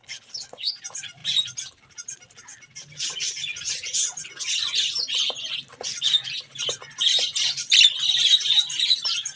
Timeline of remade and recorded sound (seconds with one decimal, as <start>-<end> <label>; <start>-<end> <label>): 0.0-0.7 remade; 0.7-9.4 recorded